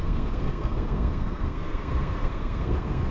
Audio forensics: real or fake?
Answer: fake